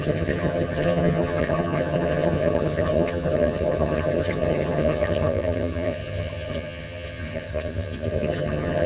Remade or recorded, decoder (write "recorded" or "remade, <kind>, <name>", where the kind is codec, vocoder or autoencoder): remade, vocoder, HiFi-GAN